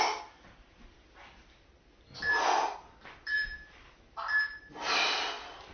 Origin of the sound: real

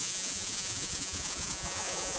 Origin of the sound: fake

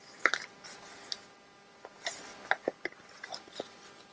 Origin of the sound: real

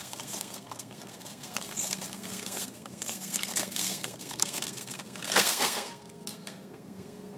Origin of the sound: fake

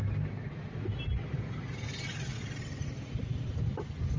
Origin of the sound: real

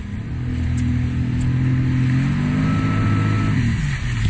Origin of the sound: real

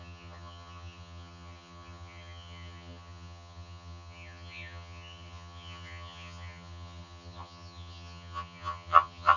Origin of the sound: fake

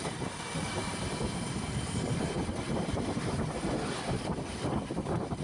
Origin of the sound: real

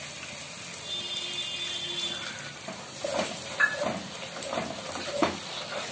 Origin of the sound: real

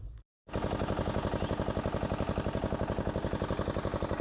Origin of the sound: real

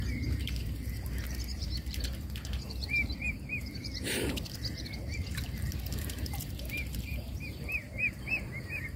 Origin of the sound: fake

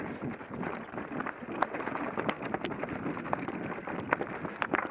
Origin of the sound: real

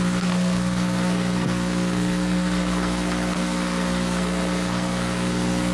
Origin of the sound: fake